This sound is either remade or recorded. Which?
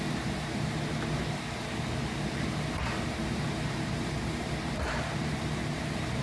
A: remade